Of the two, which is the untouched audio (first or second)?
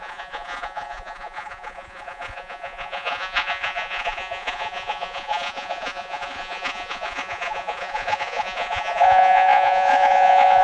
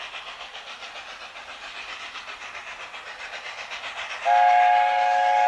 second